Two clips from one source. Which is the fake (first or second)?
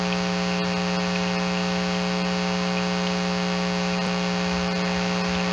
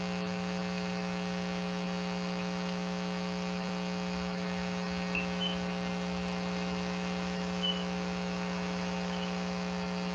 second